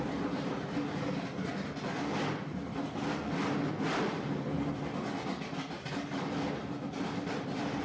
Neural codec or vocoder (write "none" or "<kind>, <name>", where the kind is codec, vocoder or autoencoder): none